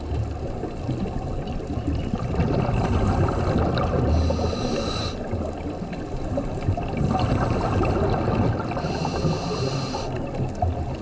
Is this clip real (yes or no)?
yes